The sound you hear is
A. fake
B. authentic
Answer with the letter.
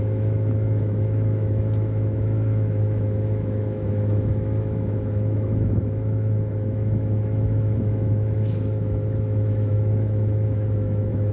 A